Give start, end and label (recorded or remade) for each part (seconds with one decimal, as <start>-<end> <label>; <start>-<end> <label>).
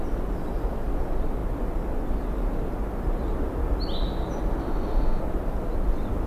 0.0-4.6 recorded; 4.6-5.2 remade; 5.2-6.3 recorded